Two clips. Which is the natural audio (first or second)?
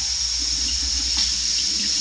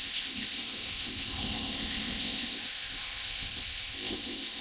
first